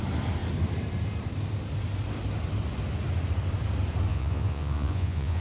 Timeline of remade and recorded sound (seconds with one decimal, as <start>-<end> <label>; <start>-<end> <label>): 0.0-4.1 recorded; 4.1-5.4 remade